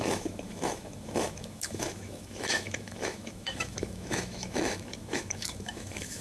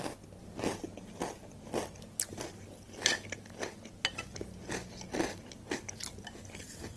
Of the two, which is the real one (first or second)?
second